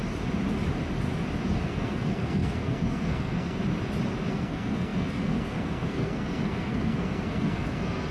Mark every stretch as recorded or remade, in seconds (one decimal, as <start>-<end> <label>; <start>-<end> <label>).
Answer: 0.0-1.6 recorded; 1.6-3.6 remade; 3.6-4.3 recorded; 4.3-8.1 remade